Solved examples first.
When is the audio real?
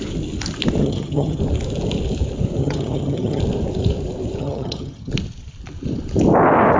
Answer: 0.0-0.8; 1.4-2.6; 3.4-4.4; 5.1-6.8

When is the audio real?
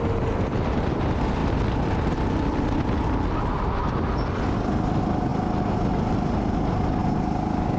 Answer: 0.0-7.8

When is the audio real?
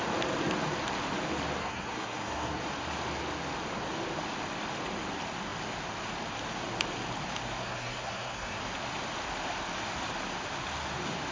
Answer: 0.0-1.6; 2.6-7.6; 8.6-11.3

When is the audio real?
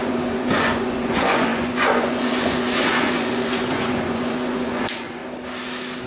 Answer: 5.2-6.1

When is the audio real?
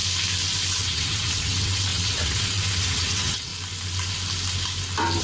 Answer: 0.0-0.8; 3.5-5.2